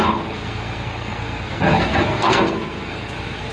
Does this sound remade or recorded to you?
remade